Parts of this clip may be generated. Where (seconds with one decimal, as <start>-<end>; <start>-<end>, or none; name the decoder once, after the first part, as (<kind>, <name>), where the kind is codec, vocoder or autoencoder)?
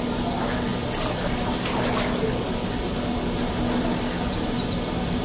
none